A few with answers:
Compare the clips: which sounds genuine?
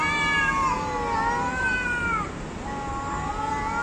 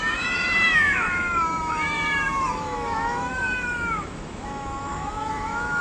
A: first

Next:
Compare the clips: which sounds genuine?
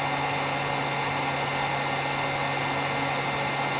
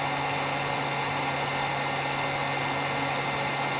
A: first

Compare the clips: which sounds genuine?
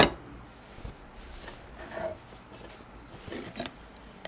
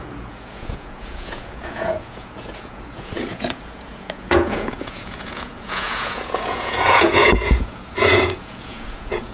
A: first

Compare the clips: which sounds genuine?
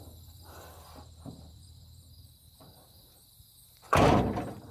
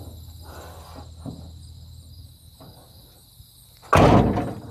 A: second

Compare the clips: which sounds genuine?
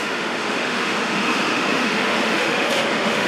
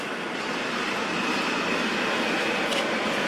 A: second